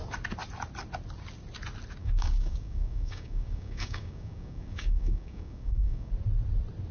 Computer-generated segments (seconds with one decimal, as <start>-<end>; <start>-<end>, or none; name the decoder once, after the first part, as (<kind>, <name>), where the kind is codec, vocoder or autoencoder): 2.0-6.1 (codec, DAC)